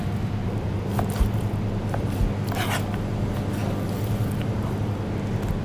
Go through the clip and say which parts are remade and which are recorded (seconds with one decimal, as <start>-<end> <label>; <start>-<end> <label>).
0.0-5.6 recorded